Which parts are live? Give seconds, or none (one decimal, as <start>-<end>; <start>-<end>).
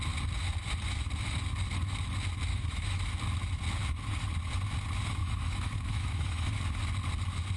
0.0-2.5; 3.0-5.2; 6.5-7.6